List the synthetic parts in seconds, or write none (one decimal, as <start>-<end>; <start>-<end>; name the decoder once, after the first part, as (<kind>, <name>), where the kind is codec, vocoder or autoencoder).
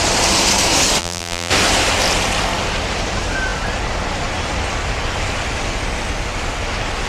1.0-1.5 (vocoder, BigVGAN v2)